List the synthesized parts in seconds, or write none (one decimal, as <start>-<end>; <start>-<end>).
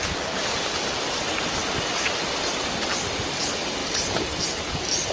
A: none